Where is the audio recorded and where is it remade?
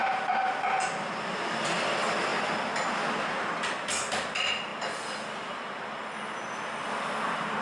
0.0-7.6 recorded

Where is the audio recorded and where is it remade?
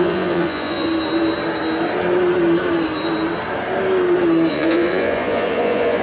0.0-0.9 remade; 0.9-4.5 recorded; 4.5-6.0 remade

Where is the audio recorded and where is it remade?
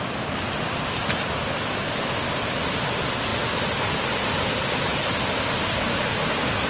0.0-6.7 recorded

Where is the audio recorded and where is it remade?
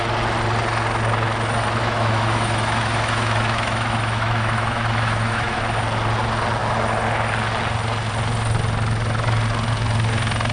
0.0-1.8 recorded; 1.8-5.6 remade; 5.6-10.5 recorded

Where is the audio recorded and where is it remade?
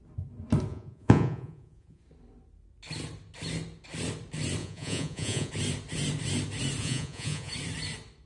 0.0-0.7 recorded; 0.7-2.0 remade; 2.0-4.6 recorded; 4.6-5.5 remade; 5.5-6.8 recorded; 6.8-7.5 remade; 7.5-8.3 recorded